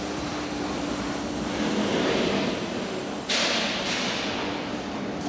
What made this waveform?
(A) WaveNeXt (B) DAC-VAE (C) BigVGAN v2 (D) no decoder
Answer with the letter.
C